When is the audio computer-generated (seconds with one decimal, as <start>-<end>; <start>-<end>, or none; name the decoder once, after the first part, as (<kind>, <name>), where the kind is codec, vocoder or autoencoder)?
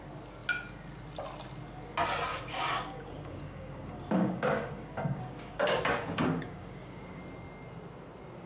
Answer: 2.3-7.2 (codec, DAC)